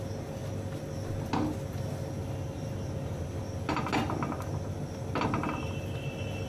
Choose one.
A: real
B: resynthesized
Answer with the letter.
A